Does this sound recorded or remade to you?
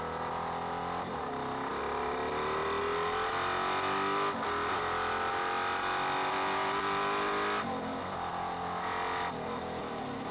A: recorded